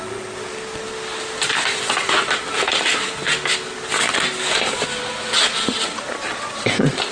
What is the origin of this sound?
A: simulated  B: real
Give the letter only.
B